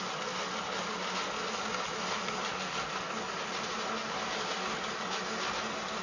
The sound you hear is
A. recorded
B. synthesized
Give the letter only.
A